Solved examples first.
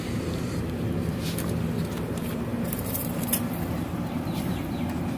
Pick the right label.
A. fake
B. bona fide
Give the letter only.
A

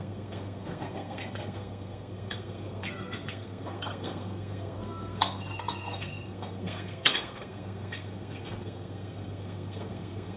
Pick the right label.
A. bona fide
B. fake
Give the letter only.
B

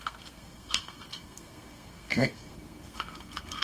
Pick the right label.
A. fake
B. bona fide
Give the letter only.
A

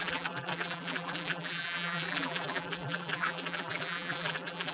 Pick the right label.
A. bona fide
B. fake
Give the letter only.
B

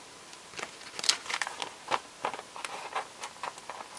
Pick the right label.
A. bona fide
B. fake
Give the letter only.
A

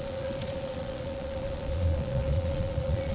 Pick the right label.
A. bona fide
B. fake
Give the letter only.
B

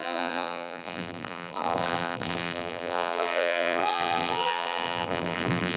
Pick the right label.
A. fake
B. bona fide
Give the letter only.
A